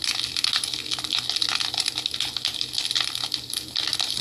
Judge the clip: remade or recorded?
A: recorded